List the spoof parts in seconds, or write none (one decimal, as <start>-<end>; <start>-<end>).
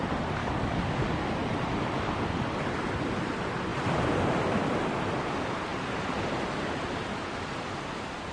0.4-1.1